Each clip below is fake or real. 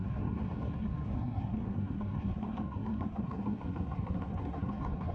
fake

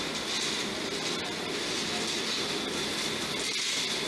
real